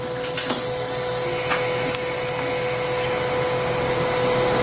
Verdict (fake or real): real